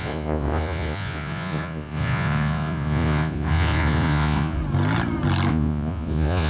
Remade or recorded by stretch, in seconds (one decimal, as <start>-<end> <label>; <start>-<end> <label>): 0.0-4.6 remade; 4.6-5.5 recorded; 5.5-6.5 remade